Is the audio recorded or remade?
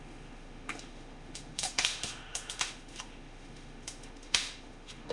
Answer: remade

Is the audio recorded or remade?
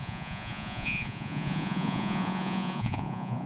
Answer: remade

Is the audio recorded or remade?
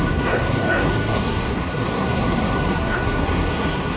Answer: remade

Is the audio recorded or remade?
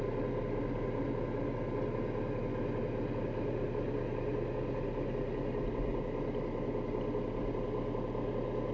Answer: recorded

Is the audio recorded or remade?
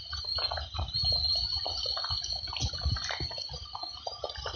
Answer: recorded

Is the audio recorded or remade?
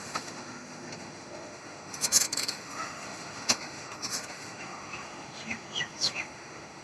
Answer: remade